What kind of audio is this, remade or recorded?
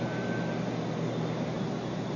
recorded